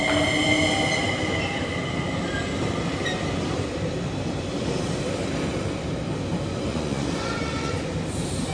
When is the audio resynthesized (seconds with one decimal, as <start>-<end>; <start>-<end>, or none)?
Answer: 6.7-7.8